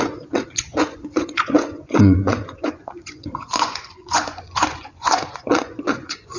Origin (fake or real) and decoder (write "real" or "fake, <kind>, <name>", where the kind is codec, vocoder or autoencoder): fake, vocoder, Vocos